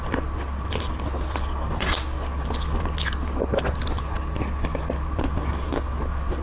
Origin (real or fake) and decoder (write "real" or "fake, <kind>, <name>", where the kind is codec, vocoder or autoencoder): real